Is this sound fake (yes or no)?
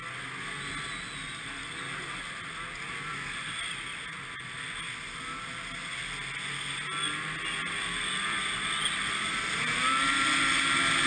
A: no